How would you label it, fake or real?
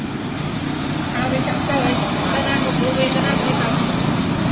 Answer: real